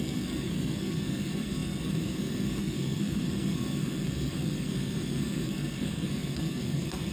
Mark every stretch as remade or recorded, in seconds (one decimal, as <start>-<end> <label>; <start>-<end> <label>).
0.0-7.1 remade

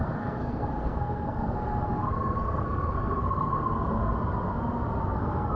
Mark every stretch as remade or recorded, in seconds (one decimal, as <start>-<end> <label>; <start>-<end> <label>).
0.0-4.0 remade; 4.0-5.1 recorded; 5.1-5.6 remade

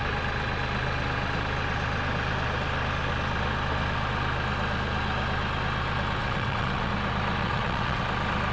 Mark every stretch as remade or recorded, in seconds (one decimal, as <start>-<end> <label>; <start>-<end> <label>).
0.0-6.2 recorded; 6.2-6.9 remade; 6.9-7.4 recorded; 7.4-8.0 remade; 8.0-8.5 recorded

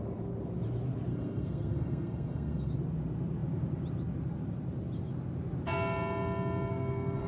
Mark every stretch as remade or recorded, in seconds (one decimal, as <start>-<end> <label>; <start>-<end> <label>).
0.0-1.1 recorded; 1.1-2.7 remade; 2.7-6.7 recorded; 6.7-7.3 remade

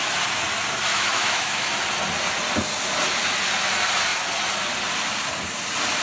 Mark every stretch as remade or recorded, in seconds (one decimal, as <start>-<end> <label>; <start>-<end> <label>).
0.0-0.9 recorded; 0.9-1.7 remade; 1.7-6.0 recorded

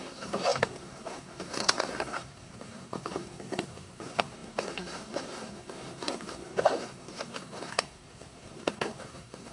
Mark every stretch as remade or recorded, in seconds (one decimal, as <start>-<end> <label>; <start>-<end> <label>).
0.0-9.5 remade